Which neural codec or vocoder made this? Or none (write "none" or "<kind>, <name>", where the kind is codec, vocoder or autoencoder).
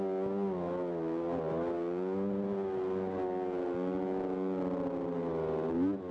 none